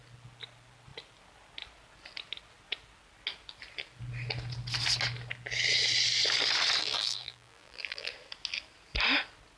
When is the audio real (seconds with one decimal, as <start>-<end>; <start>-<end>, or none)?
0.0-6.8; 8.1-9.6